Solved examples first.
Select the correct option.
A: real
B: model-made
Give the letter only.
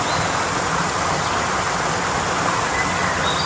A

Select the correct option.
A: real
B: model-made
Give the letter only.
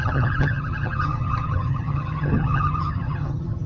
B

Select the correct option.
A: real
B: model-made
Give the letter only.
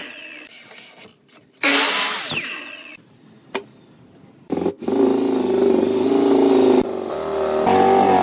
A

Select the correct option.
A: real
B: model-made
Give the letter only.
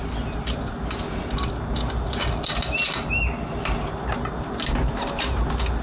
A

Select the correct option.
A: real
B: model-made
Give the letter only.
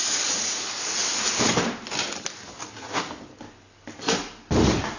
A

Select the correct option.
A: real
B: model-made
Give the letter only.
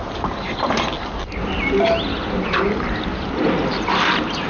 A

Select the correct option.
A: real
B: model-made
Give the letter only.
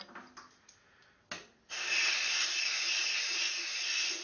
A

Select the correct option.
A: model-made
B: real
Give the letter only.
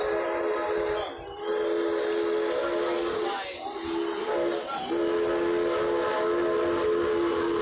B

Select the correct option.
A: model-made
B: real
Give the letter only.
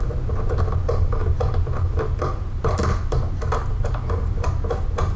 B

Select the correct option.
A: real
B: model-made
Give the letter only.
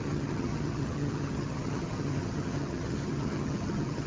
B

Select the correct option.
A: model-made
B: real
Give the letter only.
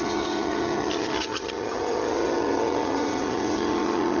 A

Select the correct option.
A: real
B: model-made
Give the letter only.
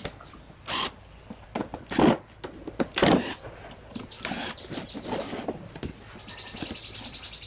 A